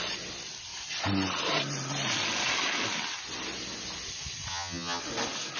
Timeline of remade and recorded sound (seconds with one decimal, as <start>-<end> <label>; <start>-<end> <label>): 0.0-4.5 recorded; 4.5-5.0 remade; 5.0-5.6 recorded